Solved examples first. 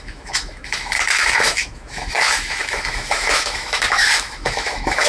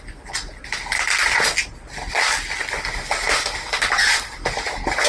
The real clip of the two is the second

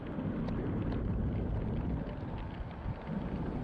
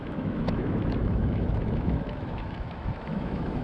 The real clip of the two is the first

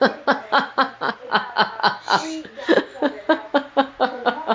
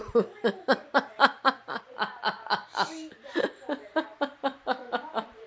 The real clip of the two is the first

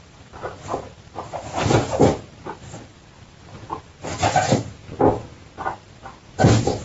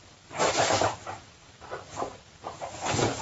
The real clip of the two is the second